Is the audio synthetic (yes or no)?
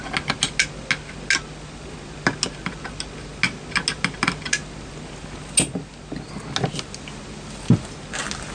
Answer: no